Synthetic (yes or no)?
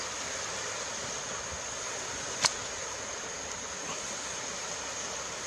no